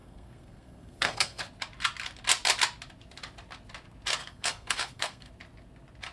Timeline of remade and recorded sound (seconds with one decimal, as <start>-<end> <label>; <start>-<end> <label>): 0.0-1.4 remade; 1.4-4.2 recorded; 4.2-5.3 remade; 5.3-6.1 recorded